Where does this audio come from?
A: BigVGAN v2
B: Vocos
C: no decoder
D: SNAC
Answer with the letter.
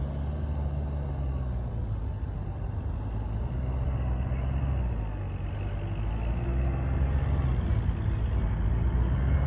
C